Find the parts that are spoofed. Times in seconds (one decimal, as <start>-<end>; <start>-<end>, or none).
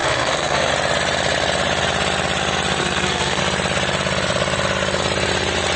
0.0-0.7; 2.8-3.4